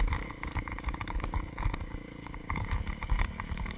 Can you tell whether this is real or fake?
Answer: fake